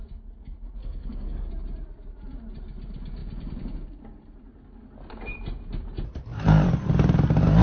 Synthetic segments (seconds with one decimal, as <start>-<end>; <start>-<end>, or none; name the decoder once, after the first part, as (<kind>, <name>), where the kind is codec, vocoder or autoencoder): 0.8-1.5 (codec, SNAC)